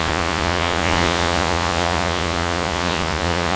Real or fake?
fake